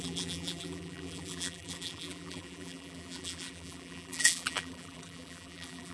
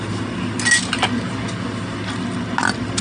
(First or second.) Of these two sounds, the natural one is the second